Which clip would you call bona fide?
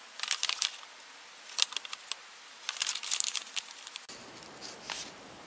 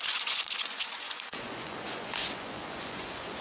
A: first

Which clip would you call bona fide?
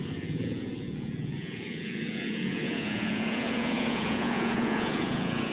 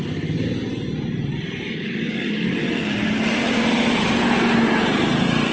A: second